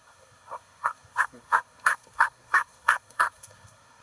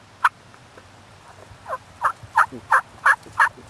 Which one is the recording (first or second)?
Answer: second